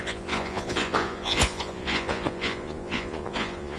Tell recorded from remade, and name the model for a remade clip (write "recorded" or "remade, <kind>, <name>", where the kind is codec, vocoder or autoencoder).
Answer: remade, vocoder, Vocos